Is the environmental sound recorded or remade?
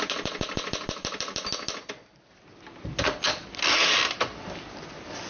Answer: recorded